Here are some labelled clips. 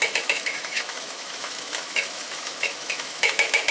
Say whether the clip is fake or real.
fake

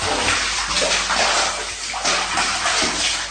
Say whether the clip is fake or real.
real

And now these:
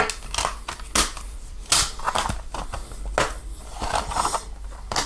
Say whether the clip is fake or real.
real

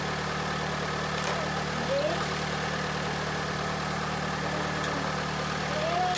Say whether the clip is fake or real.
real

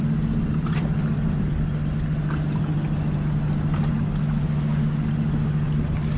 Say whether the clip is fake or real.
real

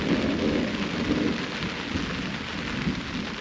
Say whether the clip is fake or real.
real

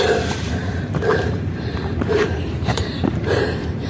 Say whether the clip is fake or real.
fake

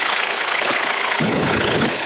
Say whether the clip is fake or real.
fake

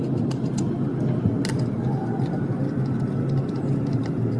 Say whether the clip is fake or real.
real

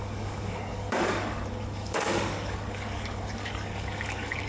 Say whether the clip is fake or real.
fake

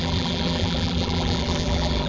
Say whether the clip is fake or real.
fake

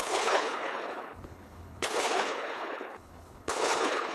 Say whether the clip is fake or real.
fake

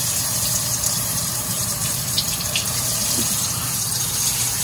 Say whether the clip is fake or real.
fake